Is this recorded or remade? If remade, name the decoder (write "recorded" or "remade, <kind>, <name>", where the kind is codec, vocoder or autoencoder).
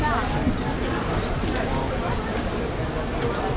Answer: recorded